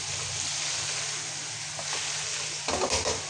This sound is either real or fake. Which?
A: real